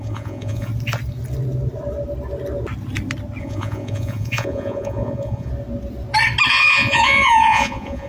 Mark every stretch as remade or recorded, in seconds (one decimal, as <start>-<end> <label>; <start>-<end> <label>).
0.0-0.7 remade; 0.7-3.4 recorded; 3.4-5.5 remade; 5.5-6.5 recorded; 6.5-8.1 remade

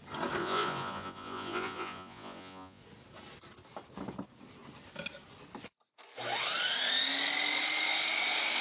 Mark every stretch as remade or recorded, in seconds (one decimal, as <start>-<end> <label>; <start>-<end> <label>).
0.0-0.4 recorded; 0.4-2.8 remade; 2.8-8.6 recorded